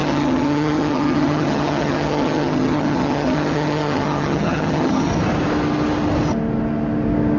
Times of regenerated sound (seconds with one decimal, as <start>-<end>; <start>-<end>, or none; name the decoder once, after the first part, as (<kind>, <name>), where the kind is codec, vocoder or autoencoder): 0.0-5.1 (vocoder, HiFi-GAN)